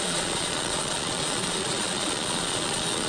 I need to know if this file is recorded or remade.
remade